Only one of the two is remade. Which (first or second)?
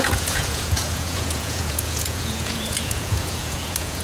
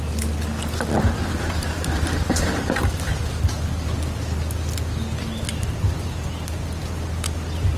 first